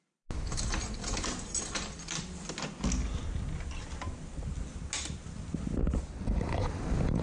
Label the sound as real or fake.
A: real